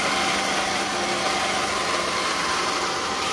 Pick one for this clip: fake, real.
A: real